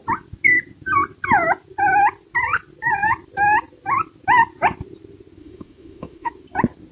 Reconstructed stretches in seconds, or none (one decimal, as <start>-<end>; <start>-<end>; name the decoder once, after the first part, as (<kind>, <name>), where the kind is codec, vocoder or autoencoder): 5.4-6.3 (autoencoder, DAC-VAE)